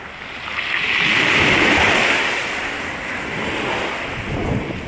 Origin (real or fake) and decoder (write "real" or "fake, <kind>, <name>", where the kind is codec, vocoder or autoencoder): real